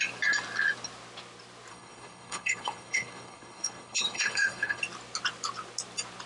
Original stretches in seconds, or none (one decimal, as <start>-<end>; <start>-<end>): 0.0-1.7; 4.8-6.3

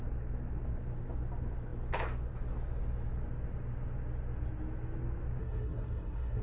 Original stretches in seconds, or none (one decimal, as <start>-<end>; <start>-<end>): 0.0-5.4

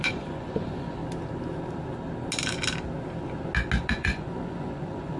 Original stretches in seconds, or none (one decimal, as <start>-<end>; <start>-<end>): 1.0-3.9

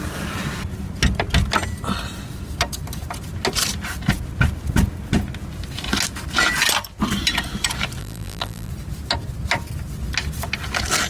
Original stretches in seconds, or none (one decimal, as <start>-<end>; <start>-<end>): 0.0-8.0; 8.7-11.1

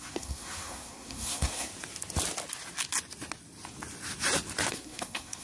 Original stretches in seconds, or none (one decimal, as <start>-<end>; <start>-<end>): 1.7-4.7

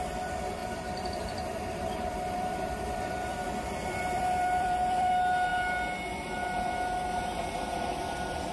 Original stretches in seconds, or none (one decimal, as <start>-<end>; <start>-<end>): 0.0-0.6; 5.1-8.5